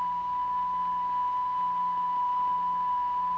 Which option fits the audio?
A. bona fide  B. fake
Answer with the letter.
A